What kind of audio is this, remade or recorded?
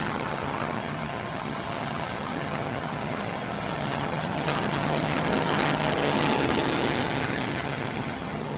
remade